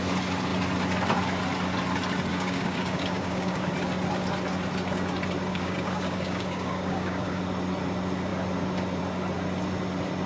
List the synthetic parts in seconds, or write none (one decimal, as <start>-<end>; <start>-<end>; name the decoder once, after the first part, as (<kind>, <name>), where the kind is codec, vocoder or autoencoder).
2.3-3.7 (codec, DAC); 5.5-7.4